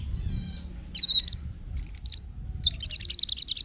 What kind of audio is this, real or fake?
real